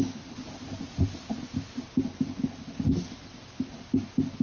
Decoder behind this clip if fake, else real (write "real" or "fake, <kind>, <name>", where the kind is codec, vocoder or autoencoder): real